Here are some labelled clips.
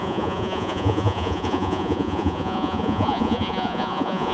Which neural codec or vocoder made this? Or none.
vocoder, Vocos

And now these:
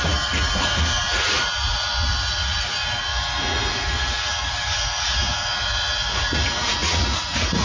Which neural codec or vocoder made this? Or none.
vocoder, Vocos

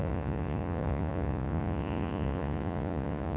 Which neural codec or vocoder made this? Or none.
vocoder, Vocos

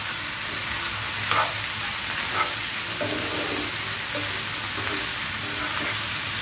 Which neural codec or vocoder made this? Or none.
none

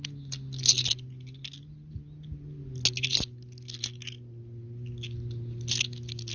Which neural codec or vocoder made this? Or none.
none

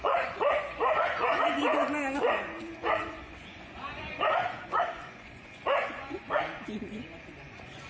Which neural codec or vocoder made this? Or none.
vocoder, Vocos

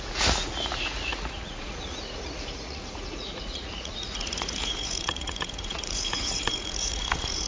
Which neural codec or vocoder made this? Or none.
vocoder, Vocos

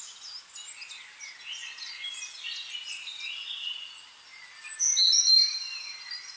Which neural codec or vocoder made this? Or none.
none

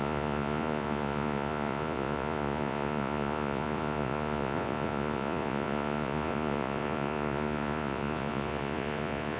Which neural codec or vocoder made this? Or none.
vocoder, Vocos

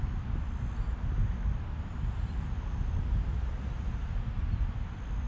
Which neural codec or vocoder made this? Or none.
none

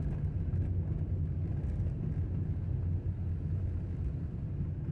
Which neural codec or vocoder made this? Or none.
none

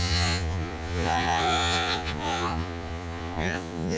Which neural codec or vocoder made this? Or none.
vocoder, Vocos